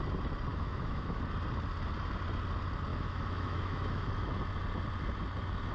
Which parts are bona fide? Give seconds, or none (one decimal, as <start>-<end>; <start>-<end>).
0.0-0.5; 1.2-2.9; 4.1-5.7